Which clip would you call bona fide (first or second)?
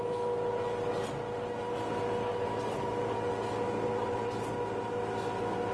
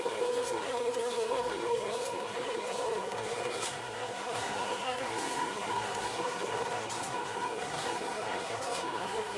first